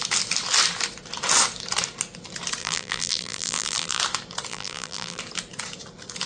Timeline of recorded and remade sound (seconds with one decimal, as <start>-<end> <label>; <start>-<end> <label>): 0.0-2.6 recorded; 2.6-4.0 remade; 4.0-4.5 recorded; 4.5-5.2 remade; 5.2-6.3 recorded